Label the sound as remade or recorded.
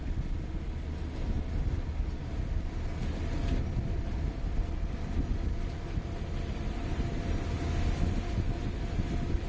recorded